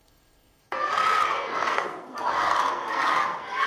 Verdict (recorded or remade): remade